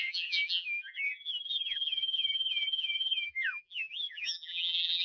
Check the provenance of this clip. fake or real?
fake